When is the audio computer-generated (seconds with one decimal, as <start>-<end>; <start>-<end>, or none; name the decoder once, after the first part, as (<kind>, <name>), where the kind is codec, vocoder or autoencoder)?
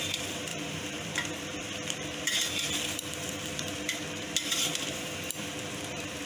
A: 0.0-6.3 (vocoder, BigVGAN v2)